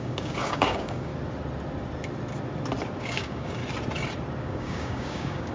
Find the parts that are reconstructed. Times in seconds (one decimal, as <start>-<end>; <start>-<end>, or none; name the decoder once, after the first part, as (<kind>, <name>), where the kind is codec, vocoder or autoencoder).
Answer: 0.0-1.1 (codec, DAC); 3.0-3.6; 4.4-5.5